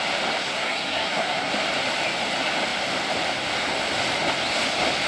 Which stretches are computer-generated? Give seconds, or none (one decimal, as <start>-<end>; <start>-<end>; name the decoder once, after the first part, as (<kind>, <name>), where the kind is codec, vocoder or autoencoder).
0.4-1.5 (codec, SNAC)